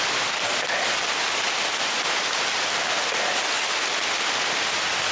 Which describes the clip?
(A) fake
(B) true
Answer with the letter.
B